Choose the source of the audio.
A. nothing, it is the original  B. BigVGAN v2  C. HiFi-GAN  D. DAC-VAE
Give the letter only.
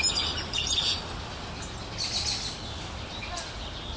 A